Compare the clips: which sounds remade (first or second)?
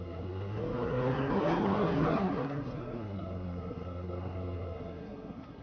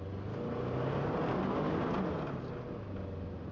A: first